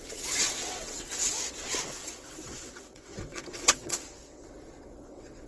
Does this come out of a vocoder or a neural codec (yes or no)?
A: yes